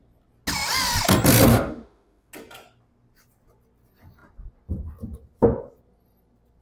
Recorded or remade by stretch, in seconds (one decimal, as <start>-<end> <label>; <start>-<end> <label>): 0.0-1.5 recorded; 1.5-2.3 remade; 2.3-6.6 recorded